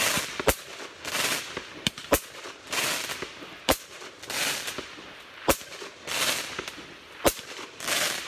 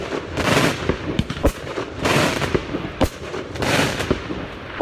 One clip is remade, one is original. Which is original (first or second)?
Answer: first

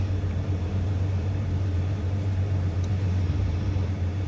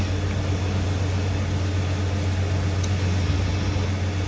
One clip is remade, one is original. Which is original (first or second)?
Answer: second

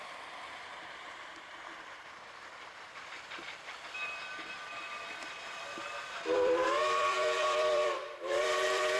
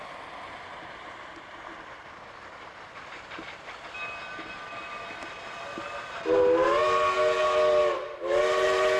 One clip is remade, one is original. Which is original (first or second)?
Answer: second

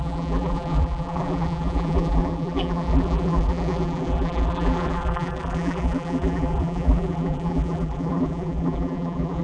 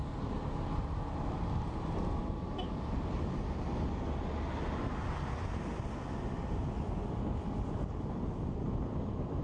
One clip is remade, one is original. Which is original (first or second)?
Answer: second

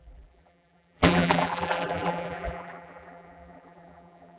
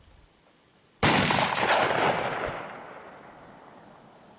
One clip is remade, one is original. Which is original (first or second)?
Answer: second